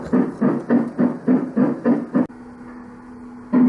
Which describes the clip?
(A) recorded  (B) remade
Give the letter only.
A